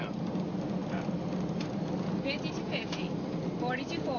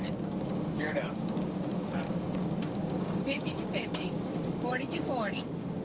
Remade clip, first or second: second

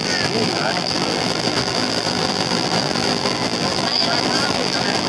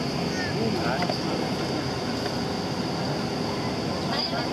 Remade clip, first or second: first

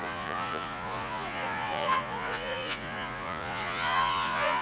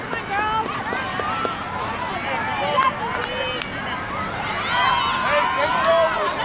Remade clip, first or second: first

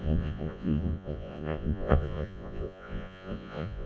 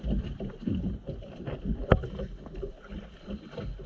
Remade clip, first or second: first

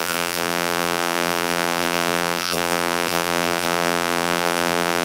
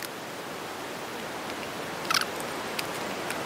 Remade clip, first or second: first